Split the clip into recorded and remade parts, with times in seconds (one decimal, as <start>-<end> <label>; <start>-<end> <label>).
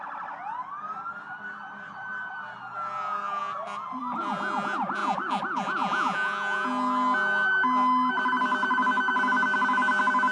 0.0-0.6 recorded; 0.6-2.3 remade; 2.3-10.3 recorded